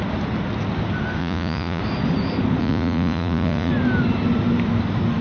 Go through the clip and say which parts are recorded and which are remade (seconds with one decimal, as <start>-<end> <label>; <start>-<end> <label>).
0.0-1.2 recorded; 1.2-1.8 remade; 1.8-2.6 recorded; 2.6-3.7 remade; 3.7-5.2 recorded